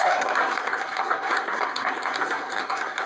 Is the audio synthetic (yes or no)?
yes